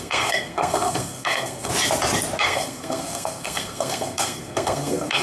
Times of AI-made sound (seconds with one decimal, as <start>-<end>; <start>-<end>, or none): 0.0-1.7; 2.4-5.2